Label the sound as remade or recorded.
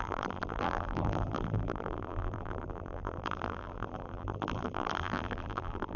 remade